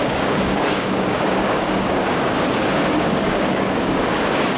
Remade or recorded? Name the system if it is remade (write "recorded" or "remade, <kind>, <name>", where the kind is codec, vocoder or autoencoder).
remade, codec, DAC